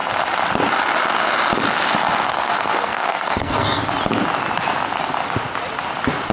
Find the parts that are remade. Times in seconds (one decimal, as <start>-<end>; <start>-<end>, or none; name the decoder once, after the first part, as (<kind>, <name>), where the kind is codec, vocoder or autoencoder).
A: 2.3-3.8 (codec, SNAC)